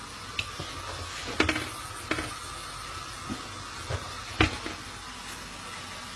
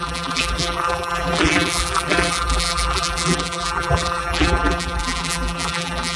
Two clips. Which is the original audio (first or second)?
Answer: first